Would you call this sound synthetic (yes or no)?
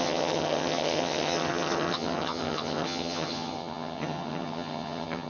yes